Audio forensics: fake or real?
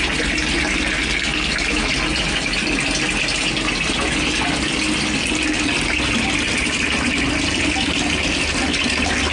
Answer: real